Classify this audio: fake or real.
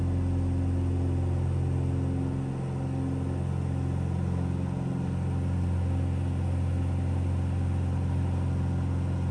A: real